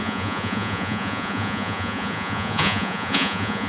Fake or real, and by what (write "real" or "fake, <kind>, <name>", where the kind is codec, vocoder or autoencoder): fake, vocoder, Vocos